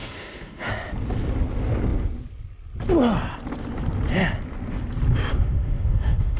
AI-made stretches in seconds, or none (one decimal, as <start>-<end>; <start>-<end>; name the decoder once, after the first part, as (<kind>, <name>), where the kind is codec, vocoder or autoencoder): 0.0-0.7 (autoencoder, DAC-VAE); 5.3-6.4